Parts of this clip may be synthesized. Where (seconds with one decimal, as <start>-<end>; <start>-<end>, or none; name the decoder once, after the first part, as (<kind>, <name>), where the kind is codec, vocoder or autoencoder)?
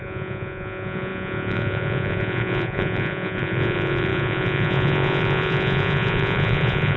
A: 0.0-7.0 (vocoder, Vocos)